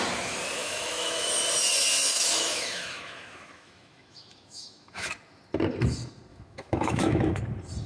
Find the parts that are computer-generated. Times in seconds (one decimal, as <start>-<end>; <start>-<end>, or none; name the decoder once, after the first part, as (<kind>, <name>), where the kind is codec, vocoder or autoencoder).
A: 0.6-1.3 (autoencoder, DAC-VAE); 2.1-5.1; 6.3-7.4